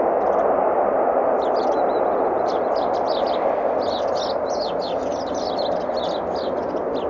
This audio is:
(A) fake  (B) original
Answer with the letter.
B